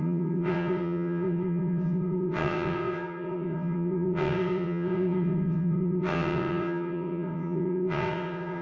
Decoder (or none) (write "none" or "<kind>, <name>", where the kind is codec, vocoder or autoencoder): vocoder, WaveNeXt